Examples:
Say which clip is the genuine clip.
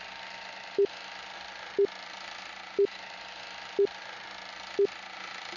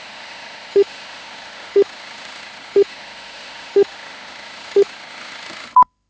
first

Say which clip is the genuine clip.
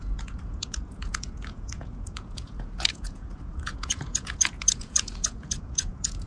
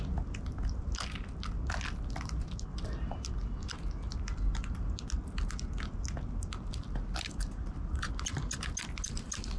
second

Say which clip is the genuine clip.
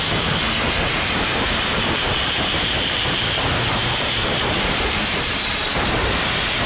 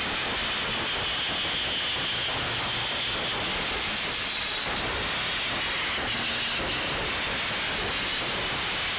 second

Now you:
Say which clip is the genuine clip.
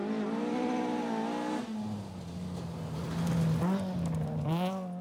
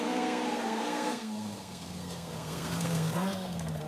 first